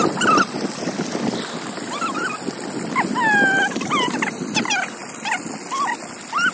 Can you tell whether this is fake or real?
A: real